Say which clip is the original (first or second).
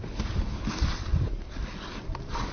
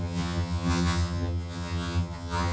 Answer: first